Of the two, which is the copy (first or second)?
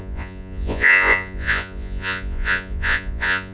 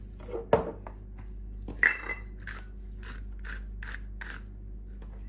first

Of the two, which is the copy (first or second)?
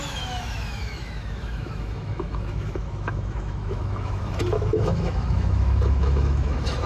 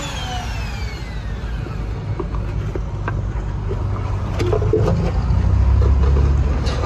first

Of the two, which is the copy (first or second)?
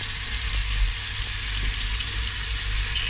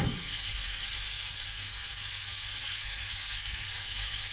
second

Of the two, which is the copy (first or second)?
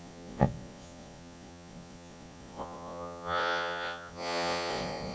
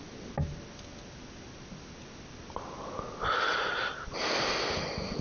first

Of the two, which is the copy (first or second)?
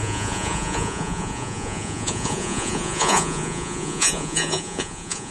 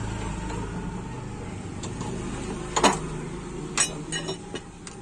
first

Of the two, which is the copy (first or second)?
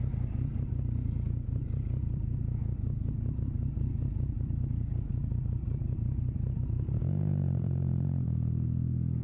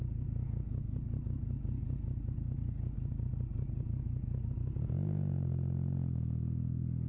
first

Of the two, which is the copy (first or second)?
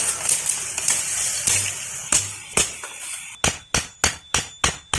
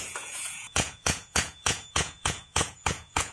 second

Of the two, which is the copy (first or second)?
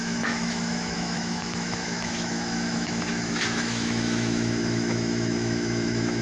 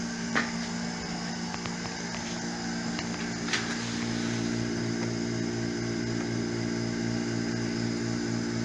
first